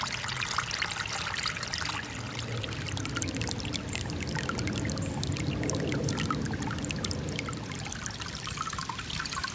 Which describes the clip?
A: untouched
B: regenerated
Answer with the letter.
A